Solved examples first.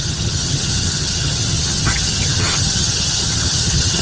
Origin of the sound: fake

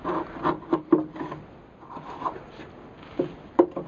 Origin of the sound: real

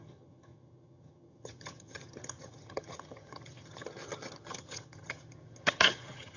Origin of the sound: fake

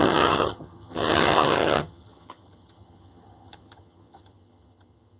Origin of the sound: fake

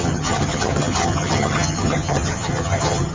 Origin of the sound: fake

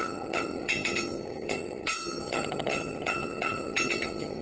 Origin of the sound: fake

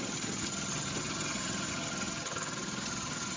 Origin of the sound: fake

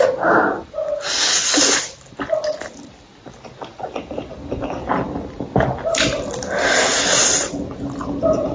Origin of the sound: real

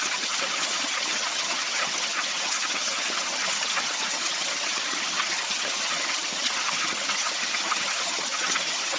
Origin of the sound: fake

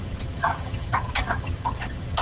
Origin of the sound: fake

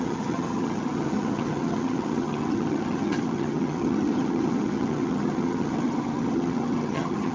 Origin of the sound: fake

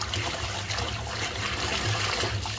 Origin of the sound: real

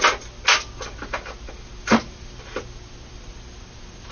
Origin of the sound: real